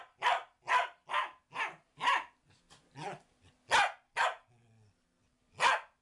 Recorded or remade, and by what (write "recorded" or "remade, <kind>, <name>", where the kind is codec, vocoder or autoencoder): recorded